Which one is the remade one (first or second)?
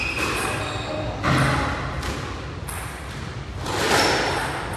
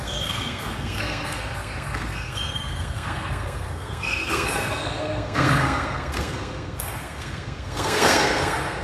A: second